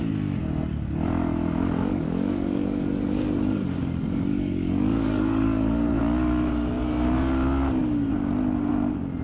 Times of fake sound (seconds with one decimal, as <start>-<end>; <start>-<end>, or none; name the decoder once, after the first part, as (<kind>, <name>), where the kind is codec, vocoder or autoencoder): 1.9-3.0 (codec, DAC); 4.3-6.0